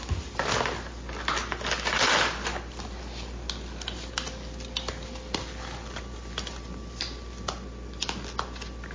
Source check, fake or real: real